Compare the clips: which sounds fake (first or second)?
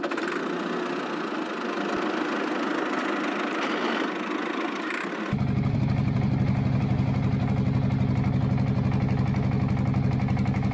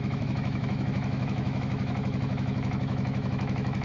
second